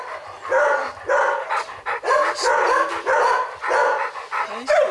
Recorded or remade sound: recorded